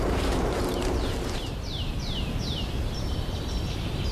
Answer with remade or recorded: remade